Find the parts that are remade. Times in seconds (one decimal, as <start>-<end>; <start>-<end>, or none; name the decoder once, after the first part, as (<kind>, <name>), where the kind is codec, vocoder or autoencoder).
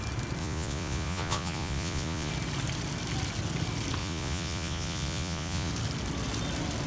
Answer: 0.4-2.3 (vocoder, Vocos); 4.0-5.7